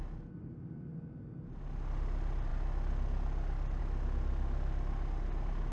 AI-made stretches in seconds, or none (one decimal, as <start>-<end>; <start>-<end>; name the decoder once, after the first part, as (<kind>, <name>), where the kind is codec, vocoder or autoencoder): none